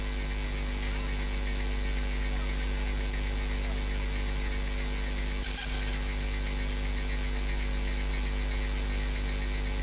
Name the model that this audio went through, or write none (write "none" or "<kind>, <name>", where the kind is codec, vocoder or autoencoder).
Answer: none